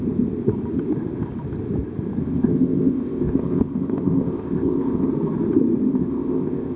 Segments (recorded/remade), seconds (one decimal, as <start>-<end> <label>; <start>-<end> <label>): 0.0-2.2 recorded; 2.2-5.1 remade; 5.1-5.9 recorded; 5.9-6.8 remade